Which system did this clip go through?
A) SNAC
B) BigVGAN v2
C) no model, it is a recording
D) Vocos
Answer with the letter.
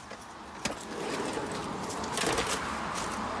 C